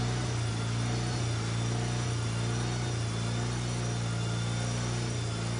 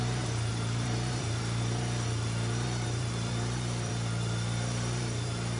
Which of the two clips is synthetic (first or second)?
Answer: second